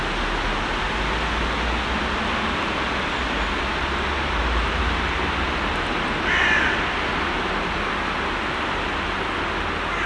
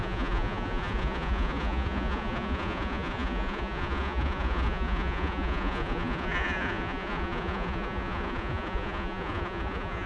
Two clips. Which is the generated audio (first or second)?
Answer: second